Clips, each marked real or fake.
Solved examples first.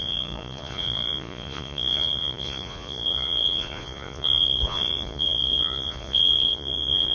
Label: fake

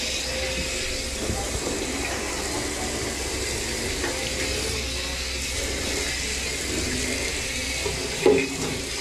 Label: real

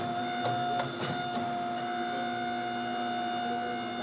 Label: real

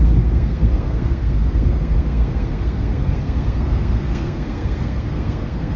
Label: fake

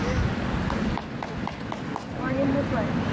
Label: real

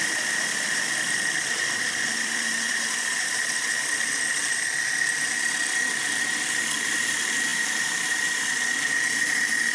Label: fake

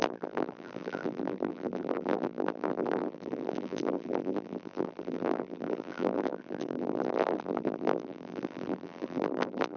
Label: fake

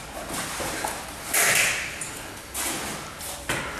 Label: real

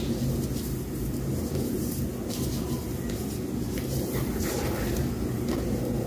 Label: real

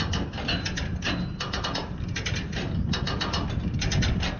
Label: real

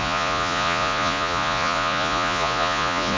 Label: fake